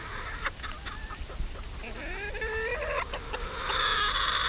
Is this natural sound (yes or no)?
yes